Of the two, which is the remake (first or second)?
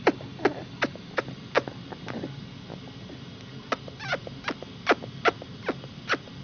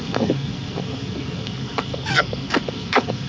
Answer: second